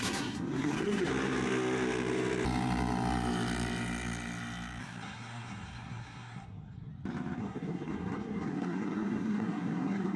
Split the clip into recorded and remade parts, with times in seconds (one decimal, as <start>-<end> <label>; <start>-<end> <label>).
0.0-1.1 remade; 1.1-4.8 recorded; 4.8-6.9 remade; 6.9-7.4 recorded; 7.4-10.2 remade